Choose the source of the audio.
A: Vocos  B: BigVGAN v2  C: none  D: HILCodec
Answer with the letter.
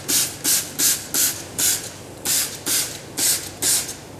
C